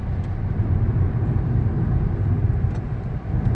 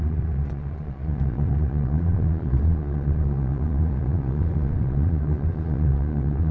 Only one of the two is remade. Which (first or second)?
second